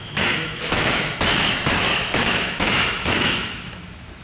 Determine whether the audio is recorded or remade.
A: remade